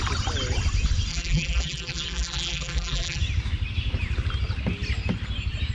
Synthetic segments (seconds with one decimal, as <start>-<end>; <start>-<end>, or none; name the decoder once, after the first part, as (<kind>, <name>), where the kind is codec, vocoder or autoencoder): 1.1-3.2 (vocoder, BigVGAN v2)